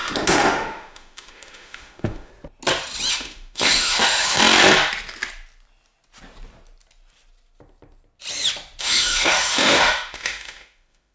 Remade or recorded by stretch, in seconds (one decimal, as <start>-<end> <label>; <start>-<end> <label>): 0.0-2.3 remade; 2.3-3.1 recorded; 3.1-4.4 remade; 4.4-8.8 recorded; 8.8-11.1 remade